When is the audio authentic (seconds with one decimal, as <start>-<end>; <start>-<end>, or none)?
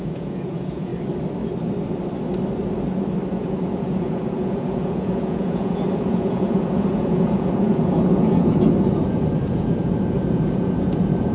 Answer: 0.9-3.3